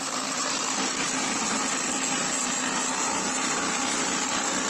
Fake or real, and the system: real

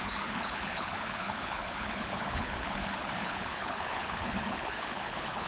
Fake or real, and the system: fake, codec, HILCodec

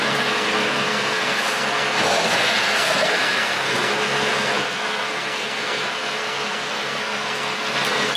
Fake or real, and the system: fake, codec, SNAC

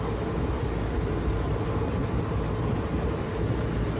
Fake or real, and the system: real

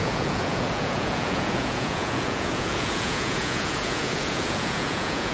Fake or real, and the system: fake, vocoder, Vocos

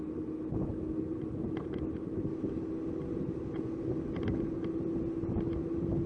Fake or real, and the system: real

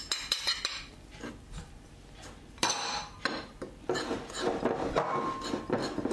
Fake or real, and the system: real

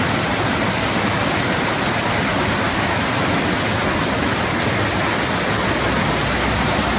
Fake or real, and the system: real